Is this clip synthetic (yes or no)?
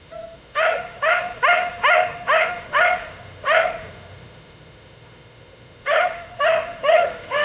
yes